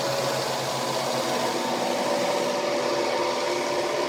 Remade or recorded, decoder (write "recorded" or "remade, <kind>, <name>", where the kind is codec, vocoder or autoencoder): recorded